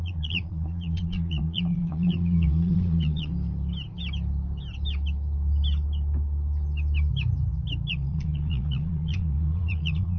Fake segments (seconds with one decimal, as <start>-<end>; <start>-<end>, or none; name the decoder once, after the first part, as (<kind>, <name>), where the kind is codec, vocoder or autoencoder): 0.0-3.3 (vocoder, Vocos); 7.9-10.2